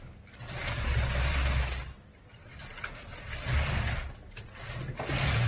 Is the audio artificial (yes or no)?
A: no